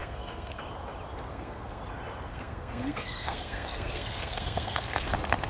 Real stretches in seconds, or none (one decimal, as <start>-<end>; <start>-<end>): 0.6-1.3; 1.8-2.3; 5.1-5.5